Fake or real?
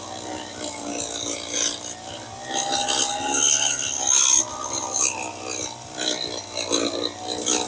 real